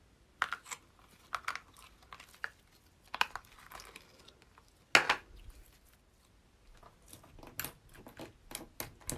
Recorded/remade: recorded